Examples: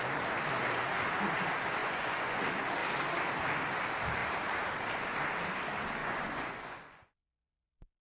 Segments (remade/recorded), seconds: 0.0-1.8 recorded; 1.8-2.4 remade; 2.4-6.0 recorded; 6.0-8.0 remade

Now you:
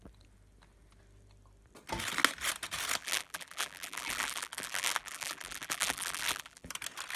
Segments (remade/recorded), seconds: 0.0-3.0 recorded; 3.0-6.7 remade; 6.7-7.2 recorded

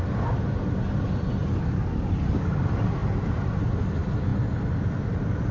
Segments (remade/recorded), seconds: 0.0-5.5 recorded

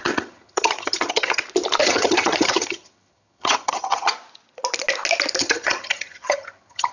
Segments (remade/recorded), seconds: 0.0-1.4 remade; 1.4-1.8 recorded; 1.8-4.1 remade; 4.1-5.4 recorded; 5.4-6.9 remade

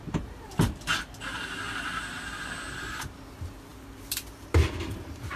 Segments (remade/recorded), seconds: 0.0-0.9 remade; 0.9-2.9 recorded; 2.9-5.4 remade

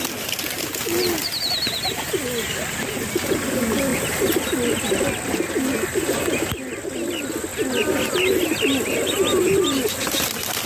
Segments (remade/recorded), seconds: 0.0-10.7 recorded

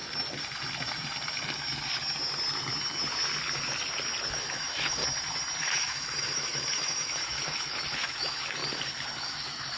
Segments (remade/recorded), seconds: 0.0-4.3 recorded; 4.3-5.0 remade; 5.0-5.6 recorded; 5.6-8.6 remade; 8.6-9.3 recorded; 9.3-9.8 remade

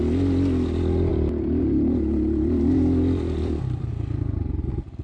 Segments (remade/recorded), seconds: 0.0-1.1 recorded; 1.1-3.9 remade; 3.9-5.0 recorded